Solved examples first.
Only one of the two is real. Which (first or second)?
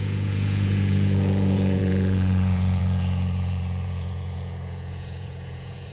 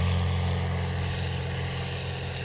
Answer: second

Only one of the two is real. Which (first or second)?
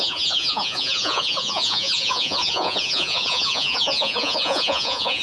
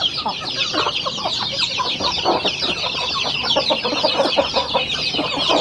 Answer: second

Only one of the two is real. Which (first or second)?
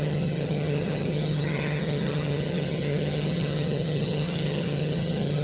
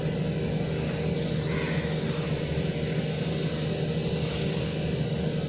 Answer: second